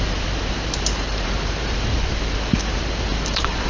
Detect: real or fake fake